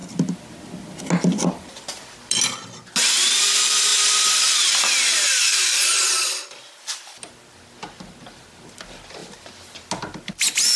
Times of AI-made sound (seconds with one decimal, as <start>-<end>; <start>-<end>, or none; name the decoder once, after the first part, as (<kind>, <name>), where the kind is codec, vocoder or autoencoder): none